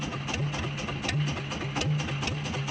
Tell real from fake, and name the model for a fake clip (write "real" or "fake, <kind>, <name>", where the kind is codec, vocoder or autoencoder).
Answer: real